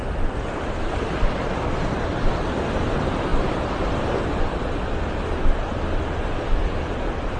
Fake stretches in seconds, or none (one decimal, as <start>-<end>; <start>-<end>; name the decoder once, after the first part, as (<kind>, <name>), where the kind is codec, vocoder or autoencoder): none